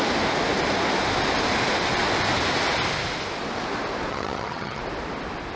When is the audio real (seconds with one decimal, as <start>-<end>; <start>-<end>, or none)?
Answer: 0.0-4.1; 4.8-5.6